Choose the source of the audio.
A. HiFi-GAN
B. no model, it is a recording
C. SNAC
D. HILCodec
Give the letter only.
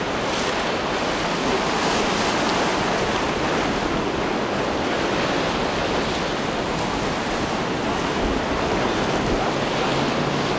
B